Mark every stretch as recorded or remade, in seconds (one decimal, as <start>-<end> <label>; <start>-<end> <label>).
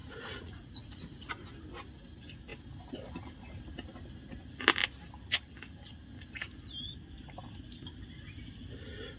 0.0-1.3 remade; 1.3-9.2 recorded